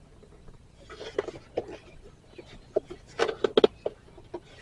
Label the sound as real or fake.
real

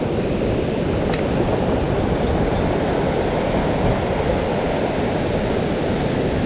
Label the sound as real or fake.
real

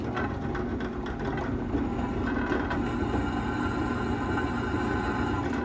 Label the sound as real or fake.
real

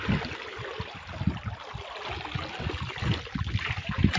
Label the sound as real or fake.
real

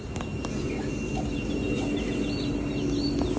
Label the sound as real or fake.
real